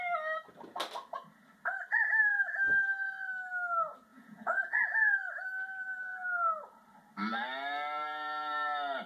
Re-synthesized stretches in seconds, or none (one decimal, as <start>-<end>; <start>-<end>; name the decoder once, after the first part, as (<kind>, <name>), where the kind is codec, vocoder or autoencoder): 4.1-4.6 (vocoder, Vocos)